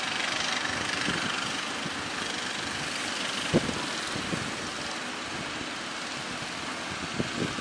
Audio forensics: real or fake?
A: real